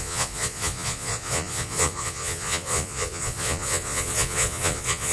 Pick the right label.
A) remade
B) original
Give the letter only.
A